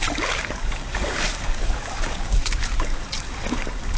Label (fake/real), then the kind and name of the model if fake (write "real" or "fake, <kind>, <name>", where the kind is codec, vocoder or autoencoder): fake, codec, DAC